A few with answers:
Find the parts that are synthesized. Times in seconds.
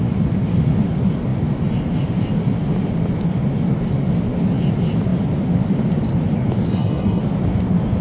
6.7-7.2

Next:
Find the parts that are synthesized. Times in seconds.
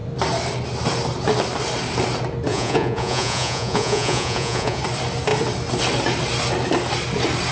2.5-4.8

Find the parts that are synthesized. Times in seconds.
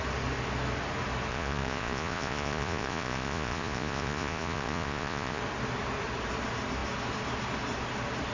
1.3-5.4